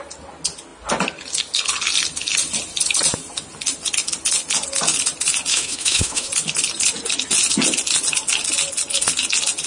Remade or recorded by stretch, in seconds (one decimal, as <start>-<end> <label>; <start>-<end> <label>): 0.0-5.5 recorded; 5.5-6.3 remade; 6.3-9.7 recorded